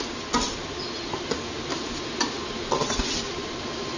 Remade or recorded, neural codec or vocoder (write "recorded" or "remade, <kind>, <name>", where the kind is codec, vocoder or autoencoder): recorded